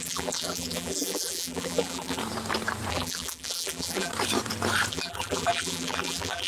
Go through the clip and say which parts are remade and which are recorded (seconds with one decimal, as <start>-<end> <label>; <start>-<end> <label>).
0.0-2.2 remade; 2.2-2.9 recorded; 2.9-4.1 remade; 4.1-4.9 recorded; 4.9-6.5 remade

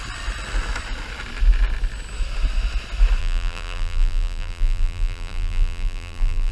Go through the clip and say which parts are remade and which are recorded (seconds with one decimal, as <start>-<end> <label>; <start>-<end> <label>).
0.0-3.2 recorded; 3.2-6.5 remade

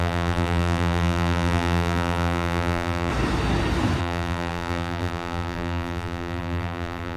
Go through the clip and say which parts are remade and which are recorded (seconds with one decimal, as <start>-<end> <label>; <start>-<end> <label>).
0.0-3.1 remade; 3.1-4.0 recorded; 4.0-7.2 remade

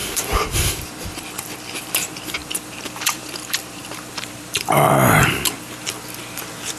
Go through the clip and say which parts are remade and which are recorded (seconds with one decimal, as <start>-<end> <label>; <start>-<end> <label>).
0.0-1.9 remade; 1.9-2.4 recorded; 2.4-6.8 remade

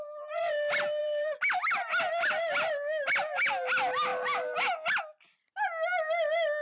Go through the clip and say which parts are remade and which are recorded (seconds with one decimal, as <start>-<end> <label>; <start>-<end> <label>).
0.0-1.0 recorded; 1.0-1.7 remade; 1.7-6.6 recorded

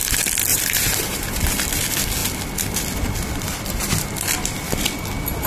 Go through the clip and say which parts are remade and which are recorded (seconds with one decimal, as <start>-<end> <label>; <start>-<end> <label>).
0.0-0.5 recorded; 0.5-1.4 remade; 1.4-5.5 recorded

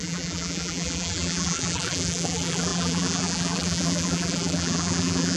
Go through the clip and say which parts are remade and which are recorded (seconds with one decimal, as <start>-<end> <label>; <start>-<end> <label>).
0.0-5.4 remade